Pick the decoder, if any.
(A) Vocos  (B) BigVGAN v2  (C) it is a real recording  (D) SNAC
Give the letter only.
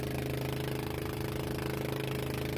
C